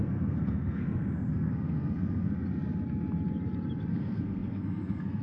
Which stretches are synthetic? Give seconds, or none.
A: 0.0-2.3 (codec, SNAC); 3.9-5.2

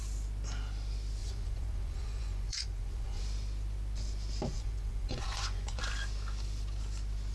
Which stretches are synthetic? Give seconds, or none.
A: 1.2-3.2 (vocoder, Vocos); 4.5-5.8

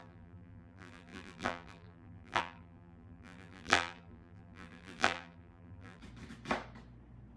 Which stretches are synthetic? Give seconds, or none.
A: 0.0-6.0 (vocoder, BigVGAN v2)

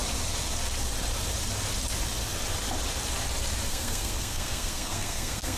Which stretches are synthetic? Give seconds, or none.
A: 3.7-5.6 (codec, SNAC)